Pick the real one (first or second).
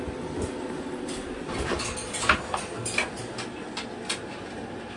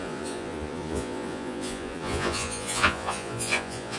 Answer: first